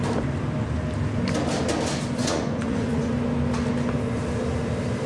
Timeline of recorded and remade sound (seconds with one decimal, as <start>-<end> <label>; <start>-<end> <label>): 0.0-2.2 recorded; 2.2-3.1 remade; 3.1-5.1 recorded